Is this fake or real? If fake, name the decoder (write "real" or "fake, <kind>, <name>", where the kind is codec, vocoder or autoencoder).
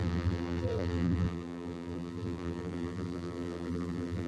fake, vocoder, BigVGAN v2